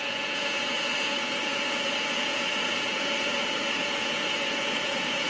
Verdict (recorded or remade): remade